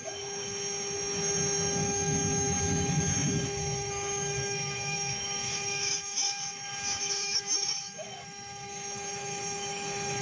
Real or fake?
fake